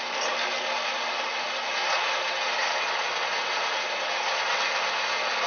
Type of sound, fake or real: real